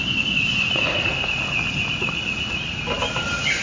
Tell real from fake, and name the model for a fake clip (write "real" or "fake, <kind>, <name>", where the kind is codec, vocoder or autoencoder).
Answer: real